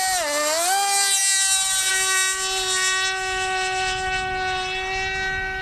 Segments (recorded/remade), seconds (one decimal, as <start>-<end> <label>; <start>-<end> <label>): 0.0-5.6 recorded